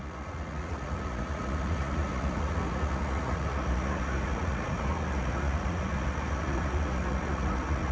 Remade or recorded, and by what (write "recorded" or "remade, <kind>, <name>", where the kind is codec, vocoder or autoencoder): remade, vocoder, Vocos